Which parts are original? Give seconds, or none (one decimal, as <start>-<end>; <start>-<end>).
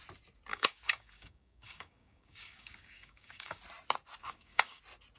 0.0-0.5; 3.6-4.2; 4.8-5.2